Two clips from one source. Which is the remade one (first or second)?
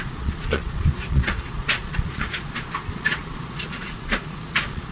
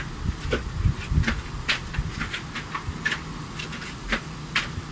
first